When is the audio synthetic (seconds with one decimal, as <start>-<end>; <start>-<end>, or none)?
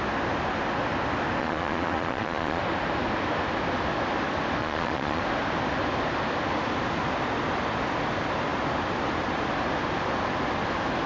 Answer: 1.4-2.6; 4.6-5.2